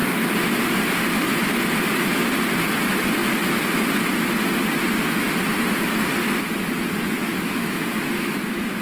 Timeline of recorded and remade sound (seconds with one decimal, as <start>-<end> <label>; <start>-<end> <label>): 0.0-7.3 recorded; 7.3-8.8 remade